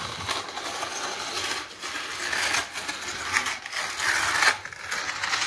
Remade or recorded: recorded